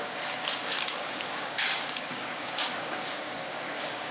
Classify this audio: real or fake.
fake